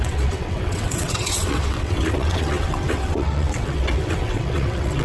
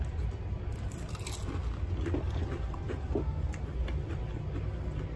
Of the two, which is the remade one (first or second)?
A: first